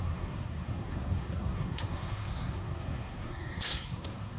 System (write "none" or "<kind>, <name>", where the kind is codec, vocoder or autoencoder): codec, SNAC